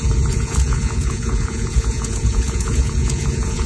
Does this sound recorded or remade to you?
remade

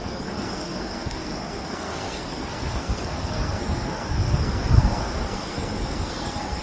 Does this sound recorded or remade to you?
remade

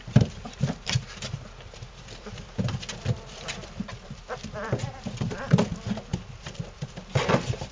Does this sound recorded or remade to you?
remade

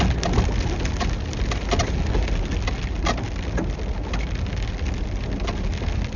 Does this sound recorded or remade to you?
recorded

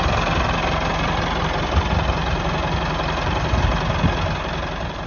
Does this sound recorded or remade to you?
recorded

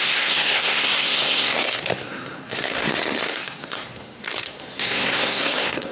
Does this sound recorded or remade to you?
remade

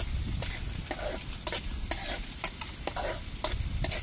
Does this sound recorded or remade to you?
recorded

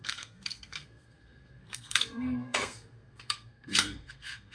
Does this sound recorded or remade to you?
remade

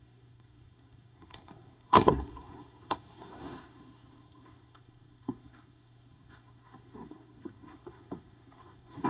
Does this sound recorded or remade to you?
remade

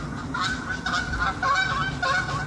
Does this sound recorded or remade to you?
recorded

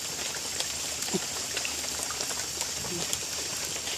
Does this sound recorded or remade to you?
recorded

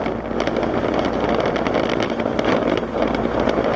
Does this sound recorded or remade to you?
recorded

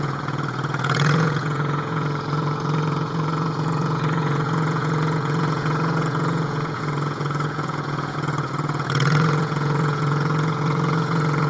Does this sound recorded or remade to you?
remade